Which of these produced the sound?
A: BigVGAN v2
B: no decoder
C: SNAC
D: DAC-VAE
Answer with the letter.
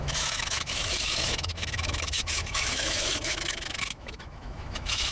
D